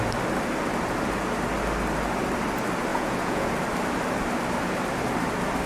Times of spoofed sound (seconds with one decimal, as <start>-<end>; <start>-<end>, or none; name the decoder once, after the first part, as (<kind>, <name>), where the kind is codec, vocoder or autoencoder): 2.9-3.5 (vocoder, Vocos)